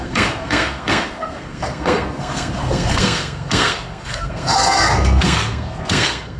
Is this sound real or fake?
fake